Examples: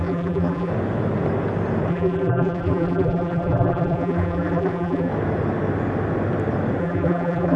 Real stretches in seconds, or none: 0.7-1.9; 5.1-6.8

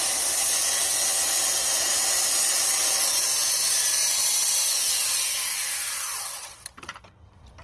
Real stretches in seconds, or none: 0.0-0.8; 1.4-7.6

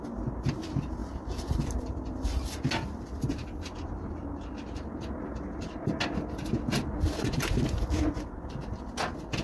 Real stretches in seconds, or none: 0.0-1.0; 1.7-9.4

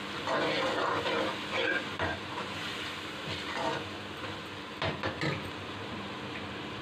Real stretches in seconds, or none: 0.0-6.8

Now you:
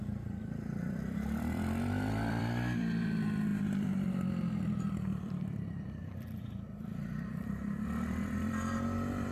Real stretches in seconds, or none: none

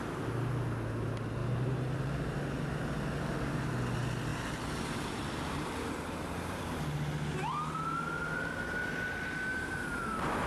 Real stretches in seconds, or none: 0.0-1.4; 2.4-4.3; 6.8-9.5; 10.0-10.5

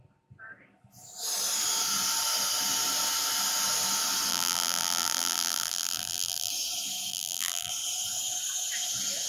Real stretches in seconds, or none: 0.0-4.3; 6.5-7.1; 7.7-9.3